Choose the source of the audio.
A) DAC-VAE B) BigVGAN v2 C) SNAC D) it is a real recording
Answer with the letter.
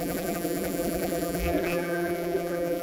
B